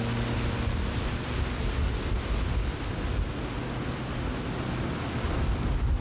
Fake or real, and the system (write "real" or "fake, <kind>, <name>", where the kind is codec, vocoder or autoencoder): real